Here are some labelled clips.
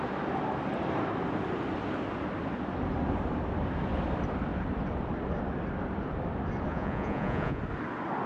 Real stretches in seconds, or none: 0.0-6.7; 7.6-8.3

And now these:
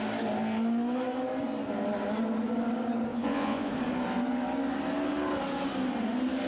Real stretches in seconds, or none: 0.0-3.1; 3.7-6.5

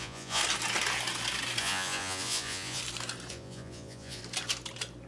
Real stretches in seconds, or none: 0.4-1.6; 2.8-3.3; 4.2-5.1

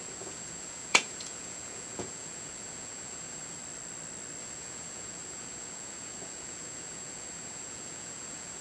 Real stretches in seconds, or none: 3.6-4.4

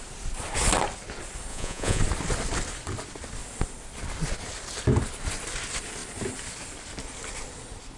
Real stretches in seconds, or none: 0.0-1.5; 2.0-8.0